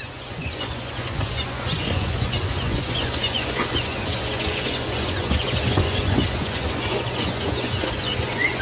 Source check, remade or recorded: remade